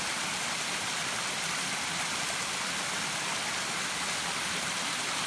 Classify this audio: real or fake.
real